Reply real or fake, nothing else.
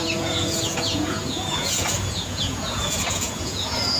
fake